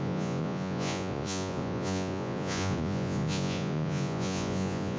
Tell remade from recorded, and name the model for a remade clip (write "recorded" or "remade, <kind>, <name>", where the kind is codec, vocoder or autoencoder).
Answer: remade, vocoder, Vocos